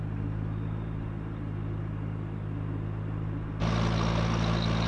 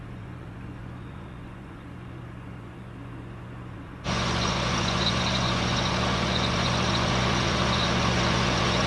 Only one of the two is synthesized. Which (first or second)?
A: second